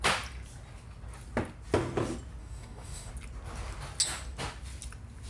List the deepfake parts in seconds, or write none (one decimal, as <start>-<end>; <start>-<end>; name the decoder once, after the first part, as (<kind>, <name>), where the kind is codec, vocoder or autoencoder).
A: 2.4-3.1 (codec, DAC)